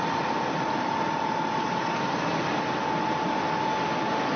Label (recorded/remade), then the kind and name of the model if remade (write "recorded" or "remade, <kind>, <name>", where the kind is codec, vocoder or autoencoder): recorded